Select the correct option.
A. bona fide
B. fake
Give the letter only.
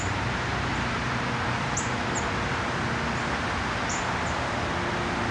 A